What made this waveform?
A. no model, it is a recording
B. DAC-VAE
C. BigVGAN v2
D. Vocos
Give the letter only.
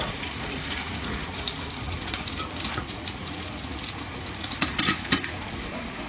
D